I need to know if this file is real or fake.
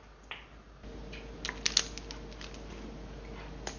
real